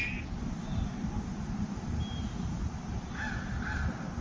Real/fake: real